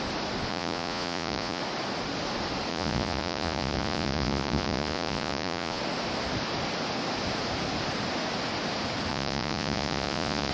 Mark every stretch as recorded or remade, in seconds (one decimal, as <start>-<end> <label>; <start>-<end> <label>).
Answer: 0.0-0.5 recorded; 0.5-1.6 remade; 1.6-2.7 recorded; 2.7-5.8 remade; 5.8-9.1 recorded; 9.1-10.5 remade